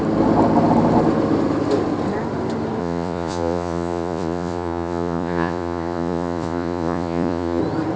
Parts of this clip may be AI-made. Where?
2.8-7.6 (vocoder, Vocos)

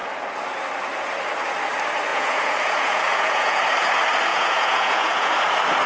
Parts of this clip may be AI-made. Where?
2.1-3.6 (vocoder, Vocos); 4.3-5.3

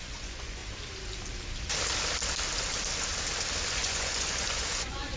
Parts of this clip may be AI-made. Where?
0.0-0.6 (vocoder, Vocos); 3.7-5.2

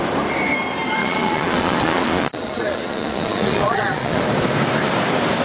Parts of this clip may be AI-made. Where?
1.0-4.2 (vocoder, Vocos)

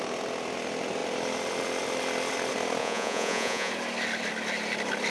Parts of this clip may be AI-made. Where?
2.8-3.7 (vocoder, Vocos)

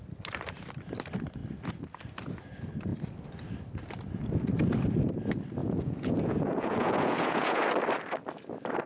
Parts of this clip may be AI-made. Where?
5.6-7.6 (vocoder, Vocos)